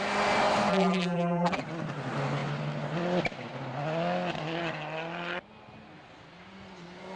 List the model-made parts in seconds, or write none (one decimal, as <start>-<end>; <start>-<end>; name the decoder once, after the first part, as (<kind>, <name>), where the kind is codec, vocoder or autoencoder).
0.7-1.6 (vocoder, BigVGAN v2)